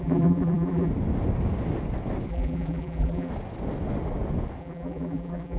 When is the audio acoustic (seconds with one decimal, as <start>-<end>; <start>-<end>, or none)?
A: 0.9-2.3; 3.3-4.6